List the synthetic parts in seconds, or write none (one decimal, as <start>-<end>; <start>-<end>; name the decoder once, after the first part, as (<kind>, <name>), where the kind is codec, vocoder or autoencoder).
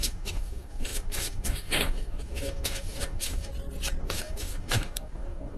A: 0.0-3.5 (codec, DAC); 4.0-5.6